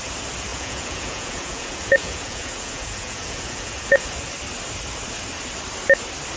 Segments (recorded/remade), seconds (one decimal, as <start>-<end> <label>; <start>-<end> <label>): 0.0-0.5 recorded; 0.5-4.3 remade; 4.3-6.4 recorded